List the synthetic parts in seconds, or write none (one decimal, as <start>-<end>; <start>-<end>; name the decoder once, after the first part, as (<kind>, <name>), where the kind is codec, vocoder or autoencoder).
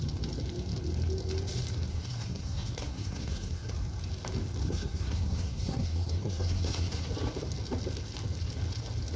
1.9-3.7 (codec, SNAC); 4.6-7.1